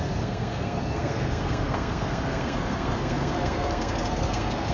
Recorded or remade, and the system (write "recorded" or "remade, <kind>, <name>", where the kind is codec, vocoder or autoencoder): remade, codec, SNAC